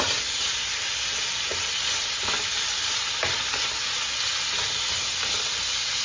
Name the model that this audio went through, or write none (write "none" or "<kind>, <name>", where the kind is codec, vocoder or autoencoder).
none